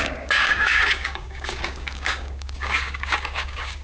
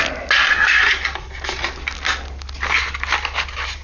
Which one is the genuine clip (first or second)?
second